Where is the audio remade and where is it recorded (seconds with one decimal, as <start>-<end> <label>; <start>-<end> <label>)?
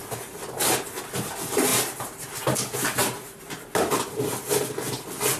0.0-5.4 recorded